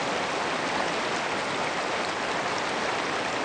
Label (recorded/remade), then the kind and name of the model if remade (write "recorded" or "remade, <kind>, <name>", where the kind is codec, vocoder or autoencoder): recorded